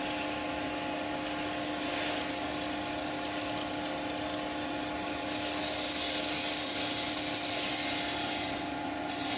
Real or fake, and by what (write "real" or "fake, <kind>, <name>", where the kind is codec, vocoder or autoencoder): real